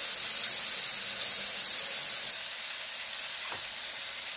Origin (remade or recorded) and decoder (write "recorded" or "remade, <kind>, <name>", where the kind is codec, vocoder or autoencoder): recorded